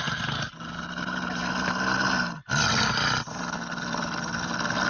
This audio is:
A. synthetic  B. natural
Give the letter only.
B